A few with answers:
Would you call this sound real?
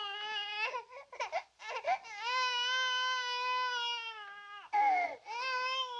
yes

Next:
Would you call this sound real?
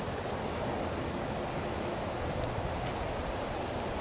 yes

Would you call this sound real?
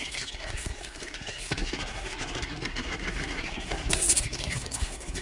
no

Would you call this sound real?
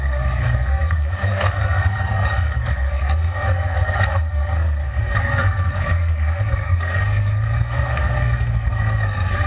no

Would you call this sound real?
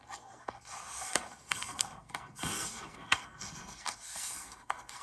no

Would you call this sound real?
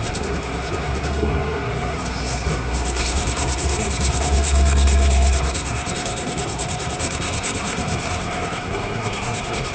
no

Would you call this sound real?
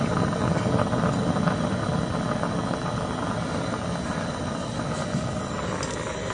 yes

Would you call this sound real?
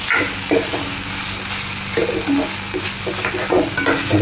yes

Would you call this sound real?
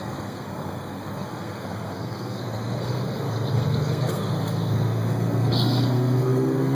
no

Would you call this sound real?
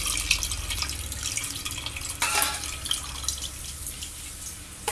yes